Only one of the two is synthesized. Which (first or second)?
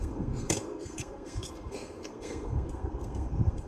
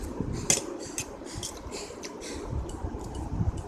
first